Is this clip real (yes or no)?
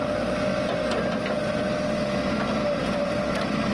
yes